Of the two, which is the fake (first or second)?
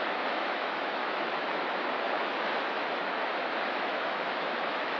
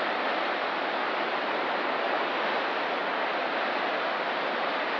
first